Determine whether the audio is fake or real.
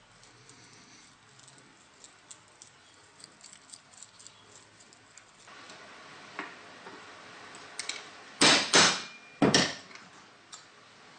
real